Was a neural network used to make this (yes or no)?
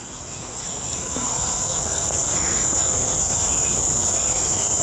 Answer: yes